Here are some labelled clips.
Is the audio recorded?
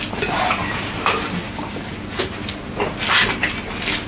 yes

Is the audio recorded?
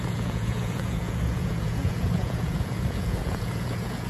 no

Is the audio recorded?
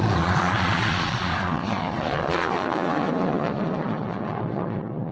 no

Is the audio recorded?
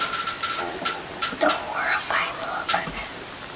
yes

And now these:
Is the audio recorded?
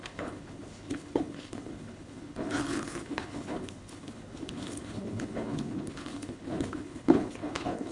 no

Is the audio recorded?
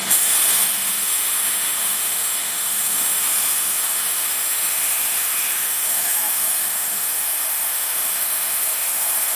no